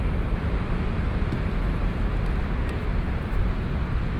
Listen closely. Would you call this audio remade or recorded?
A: recorded